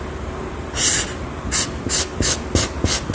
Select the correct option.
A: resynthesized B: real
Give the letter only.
B